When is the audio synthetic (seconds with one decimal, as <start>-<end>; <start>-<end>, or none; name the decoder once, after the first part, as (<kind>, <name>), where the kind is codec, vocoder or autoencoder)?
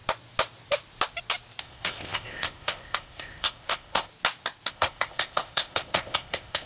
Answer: 1.6-4.1 (codec, ZipCodec); 4.7-6.7